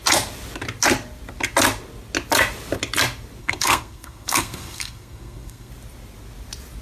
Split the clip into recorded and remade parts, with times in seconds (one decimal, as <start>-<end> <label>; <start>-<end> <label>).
0.0-3.4 recorded; 3.4-5.7 remade; 5.7-6.8 recorded